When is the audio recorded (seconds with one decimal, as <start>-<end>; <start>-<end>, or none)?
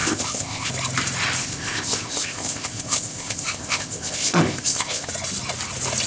0.7-1.4; 5.1-6.1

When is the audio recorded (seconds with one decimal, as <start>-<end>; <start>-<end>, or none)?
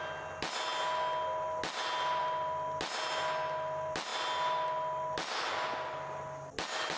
0.0-7.0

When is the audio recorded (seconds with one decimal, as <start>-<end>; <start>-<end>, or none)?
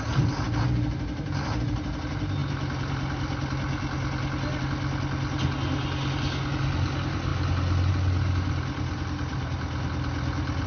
0.0-10.7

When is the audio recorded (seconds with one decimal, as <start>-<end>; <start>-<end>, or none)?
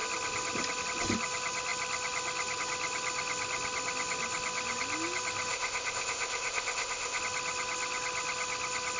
0.0-5.5; 7.2-9.0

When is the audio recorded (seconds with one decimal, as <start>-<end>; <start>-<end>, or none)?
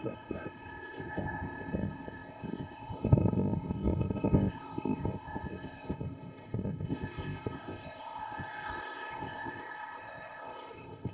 none